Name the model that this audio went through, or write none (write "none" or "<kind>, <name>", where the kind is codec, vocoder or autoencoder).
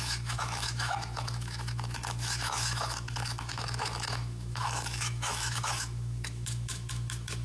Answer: autoencoder, DAC-VAE